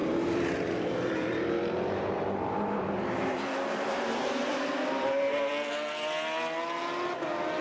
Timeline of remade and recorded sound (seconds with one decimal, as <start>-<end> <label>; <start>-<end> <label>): 0.0-4.5 remade; 4.5-5.0 recorded; 5.0-5.5 remade; 5.5-7.6 recorded